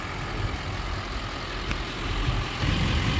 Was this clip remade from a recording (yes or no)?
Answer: no